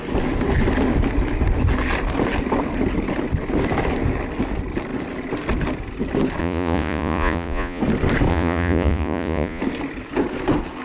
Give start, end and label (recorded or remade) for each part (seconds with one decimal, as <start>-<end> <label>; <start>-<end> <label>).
0.0-6.4 recorded; 6.4-7.8 remade; 7.8-8.3 recorded; 8.3-9.6 remade; 9.6-10.8 recorded